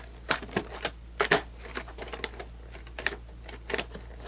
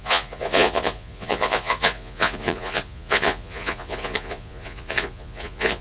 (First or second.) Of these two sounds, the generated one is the second